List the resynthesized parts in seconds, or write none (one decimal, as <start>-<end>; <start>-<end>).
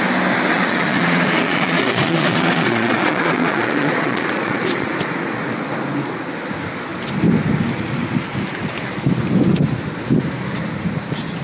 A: 0.5-4.9